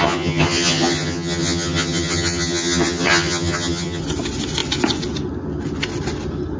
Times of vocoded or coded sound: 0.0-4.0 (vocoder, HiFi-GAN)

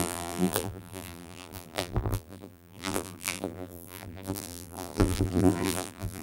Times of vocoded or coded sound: 0.0-6.2 (vocoder, BigVGAN v2)

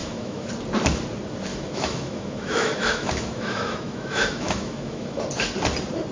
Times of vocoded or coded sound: 0.0-0.5 (autoencoder, DAC-VAE); 1.5-5.2